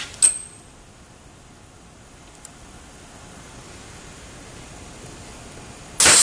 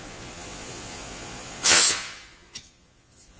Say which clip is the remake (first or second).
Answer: second